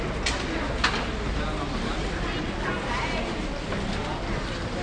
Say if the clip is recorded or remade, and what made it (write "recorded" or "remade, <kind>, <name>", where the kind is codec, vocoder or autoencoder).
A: recorded